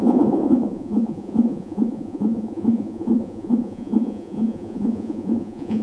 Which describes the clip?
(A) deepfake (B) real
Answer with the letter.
A